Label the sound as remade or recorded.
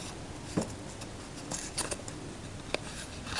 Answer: recorded